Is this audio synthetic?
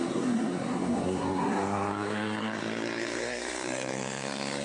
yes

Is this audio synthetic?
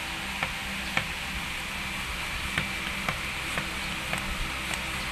no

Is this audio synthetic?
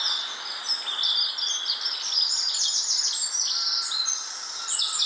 no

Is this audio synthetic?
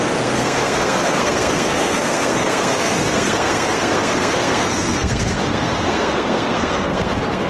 yes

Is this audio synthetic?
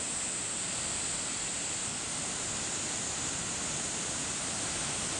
no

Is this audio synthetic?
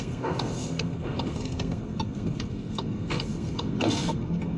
yes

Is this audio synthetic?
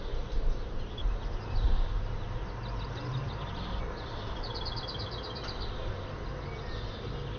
no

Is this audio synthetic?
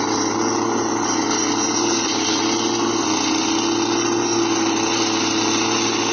no